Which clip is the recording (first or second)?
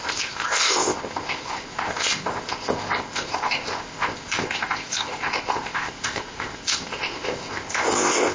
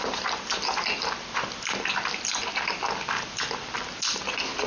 second